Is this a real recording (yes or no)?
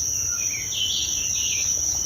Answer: yes